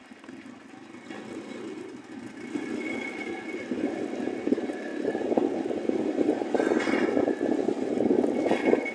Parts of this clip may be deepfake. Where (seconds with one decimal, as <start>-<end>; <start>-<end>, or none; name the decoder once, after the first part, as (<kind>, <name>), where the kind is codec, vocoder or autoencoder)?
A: none